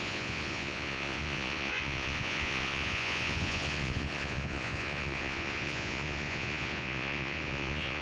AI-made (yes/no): yes